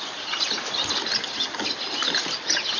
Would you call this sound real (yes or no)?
yes